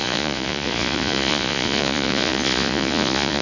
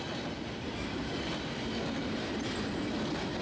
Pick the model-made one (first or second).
first